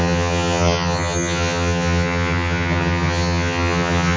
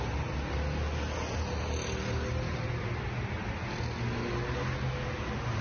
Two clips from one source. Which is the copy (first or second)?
first